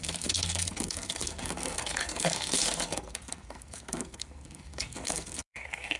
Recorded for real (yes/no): no